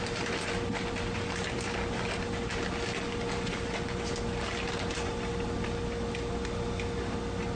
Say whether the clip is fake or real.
real